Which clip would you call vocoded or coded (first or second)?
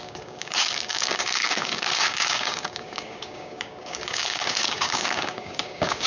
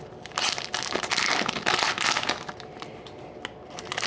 first